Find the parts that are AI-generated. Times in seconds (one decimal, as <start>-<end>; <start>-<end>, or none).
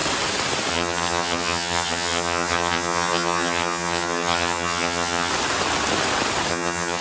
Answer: 0.7-5.3; 6.5-7.0